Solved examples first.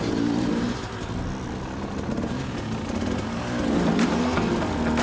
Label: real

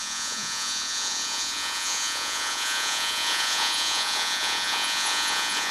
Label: fake